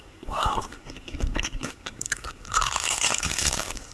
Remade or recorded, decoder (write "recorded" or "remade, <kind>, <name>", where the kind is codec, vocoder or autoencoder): remade, codec, SNAC